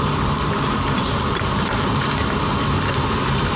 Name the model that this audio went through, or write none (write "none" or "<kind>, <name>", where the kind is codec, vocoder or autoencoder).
vocoder, BigVGAN v2